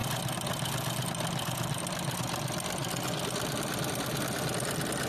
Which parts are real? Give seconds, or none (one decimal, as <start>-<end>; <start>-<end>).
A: 0.0-5.1